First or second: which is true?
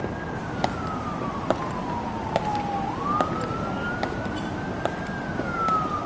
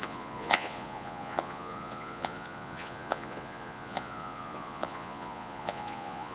first